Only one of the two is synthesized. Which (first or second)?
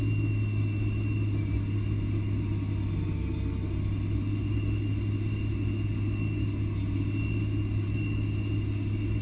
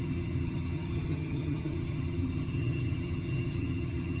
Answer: second